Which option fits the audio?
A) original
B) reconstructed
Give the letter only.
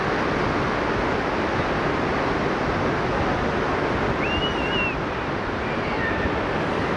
A